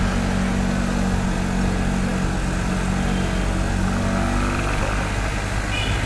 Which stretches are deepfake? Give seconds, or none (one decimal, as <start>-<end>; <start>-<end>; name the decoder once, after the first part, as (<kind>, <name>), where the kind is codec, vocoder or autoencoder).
none